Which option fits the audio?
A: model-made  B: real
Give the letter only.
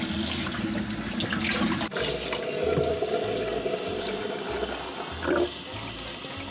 B